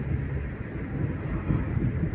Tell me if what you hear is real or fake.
real